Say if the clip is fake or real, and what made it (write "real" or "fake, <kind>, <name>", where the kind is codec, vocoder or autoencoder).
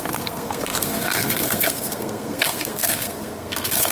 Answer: fake, codec, SNAC